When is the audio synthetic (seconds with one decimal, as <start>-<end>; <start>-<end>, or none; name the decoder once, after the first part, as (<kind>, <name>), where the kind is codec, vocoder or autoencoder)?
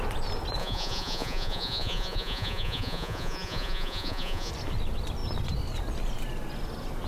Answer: 0.6-4.5 (vocoder, Vocos)